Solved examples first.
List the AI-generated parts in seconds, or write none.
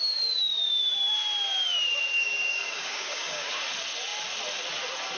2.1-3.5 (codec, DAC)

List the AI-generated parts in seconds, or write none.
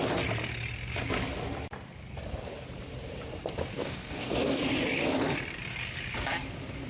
3.7-4.6 (codec, DAC)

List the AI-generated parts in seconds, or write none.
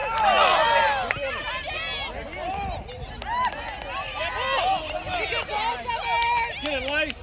none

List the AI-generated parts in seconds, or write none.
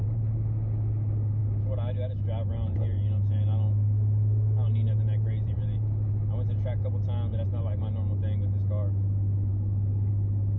9.5-10.1 (codec, DAC)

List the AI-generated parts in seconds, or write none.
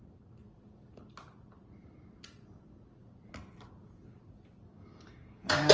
4.7-5.7 (codec, DAC)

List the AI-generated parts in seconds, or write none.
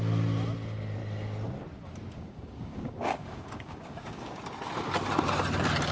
2.1-4.4 (codec, DAC)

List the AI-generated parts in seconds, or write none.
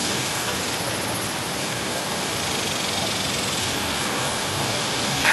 0.0-0.6 (codec, DAC); 1.6-2.3; 3.6-5.3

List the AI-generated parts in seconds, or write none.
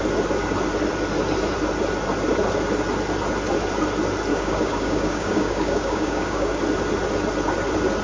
4.3-6.6 (codec, DAC)